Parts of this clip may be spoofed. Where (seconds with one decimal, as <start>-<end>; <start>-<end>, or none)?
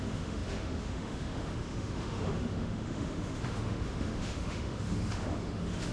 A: 0.0-5.9